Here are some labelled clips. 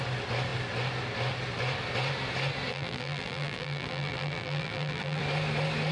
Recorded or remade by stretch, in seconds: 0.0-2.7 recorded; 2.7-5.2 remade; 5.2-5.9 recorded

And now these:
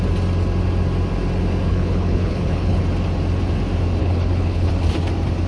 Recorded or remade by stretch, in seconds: 0.0-1.7 recorded; 1.7-2.8 remade; 2.8-4.0 recorded; 4.0-4.7 remade; 4.7-5.5 recorded

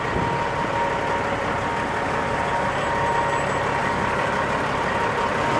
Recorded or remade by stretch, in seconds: 0.0-1.7 recorded; 1.7-2.7 remade; 2.7-3.8 recorded; 3.8-4.4 remade; 4.4-5.6 recorded